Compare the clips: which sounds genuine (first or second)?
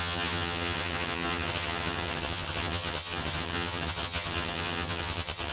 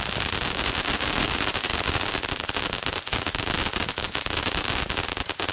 second